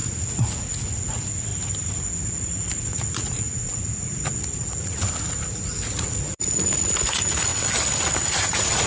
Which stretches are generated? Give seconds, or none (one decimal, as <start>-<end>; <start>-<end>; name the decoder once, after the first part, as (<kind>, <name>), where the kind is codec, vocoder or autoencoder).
0.0-1.5 (vocoder, Vocos); 2.2-7.5; 8.0-8.9